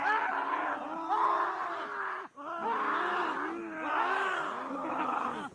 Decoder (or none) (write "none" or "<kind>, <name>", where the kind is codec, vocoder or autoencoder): none